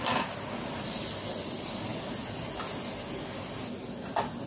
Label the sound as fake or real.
real